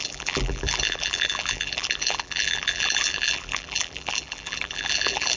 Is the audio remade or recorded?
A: remade